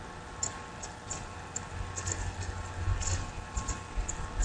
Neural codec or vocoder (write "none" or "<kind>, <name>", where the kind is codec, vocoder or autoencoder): none